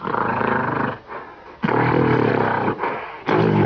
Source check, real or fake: real